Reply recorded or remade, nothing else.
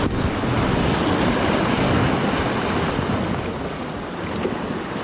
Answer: recorded